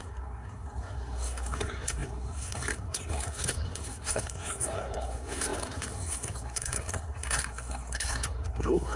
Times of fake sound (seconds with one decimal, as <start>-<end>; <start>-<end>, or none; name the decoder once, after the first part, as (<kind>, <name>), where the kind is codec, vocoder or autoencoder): 0.0-9.0 (codec, SNAC)